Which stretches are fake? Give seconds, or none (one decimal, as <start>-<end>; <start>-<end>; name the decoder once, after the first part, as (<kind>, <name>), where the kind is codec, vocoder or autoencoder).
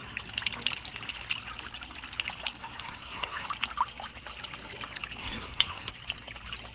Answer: 2.6-3.5 (codec, SNAC); 5.2-5.9